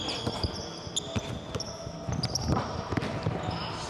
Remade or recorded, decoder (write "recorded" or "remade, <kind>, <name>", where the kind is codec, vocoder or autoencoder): recorded